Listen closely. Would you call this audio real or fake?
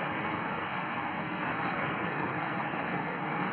fake